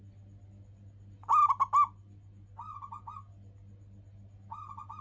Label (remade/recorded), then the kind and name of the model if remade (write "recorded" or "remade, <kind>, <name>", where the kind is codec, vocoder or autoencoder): recorded